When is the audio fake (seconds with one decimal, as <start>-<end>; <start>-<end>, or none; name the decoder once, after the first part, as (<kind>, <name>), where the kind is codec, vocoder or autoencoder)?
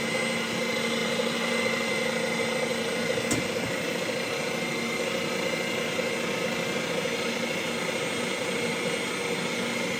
1.0-2.1 (vocoder, BigVGAN v2)